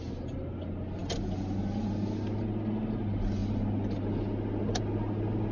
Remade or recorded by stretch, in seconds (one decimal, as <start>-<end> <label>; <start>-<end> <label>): 0.0-5.5 recorded